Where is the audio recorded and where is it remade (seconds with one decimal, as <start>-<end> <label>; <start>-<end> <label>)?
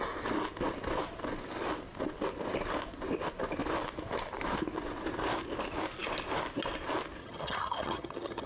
0.0-7.2 recorded; 7.2-8.5 remade